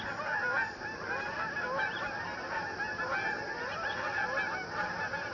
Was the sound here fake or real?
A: real